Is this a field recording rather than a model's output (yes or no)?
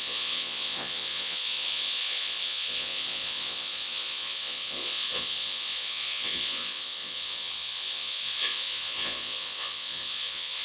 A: no